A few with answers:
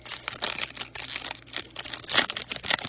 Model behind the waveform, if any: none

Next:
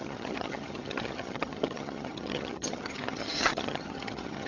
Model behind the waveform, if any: vocoder, HiFi-GAN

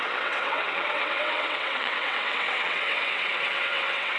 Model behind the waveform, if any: vocoder, WaveNeXt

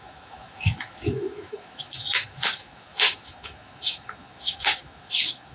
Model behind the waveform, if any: autoencoder, DAC-VAE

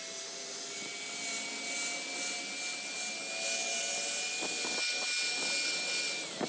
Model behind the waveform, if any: none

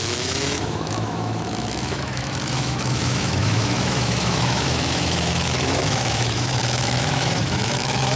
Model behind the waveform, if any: autoencoder, DAC-VAE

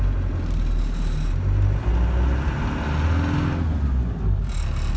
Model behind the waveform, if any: none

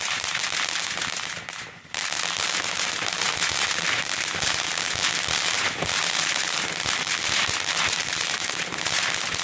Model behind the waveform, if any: vocoder, BigVGAN v2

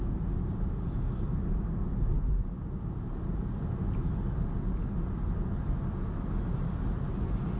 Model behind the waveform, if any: none